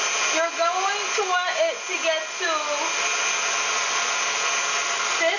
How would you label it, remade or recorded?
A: recorded